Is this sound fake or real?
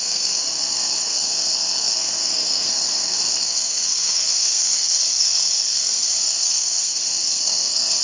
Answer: fake